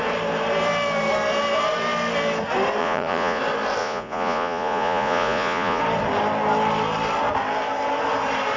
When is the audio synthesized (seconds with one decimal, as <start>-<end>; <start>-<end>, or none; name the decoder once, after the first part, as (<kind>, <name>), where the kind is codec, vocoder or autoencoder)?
2.8-3.4 (vocoder, Vocos); 3.8-5.8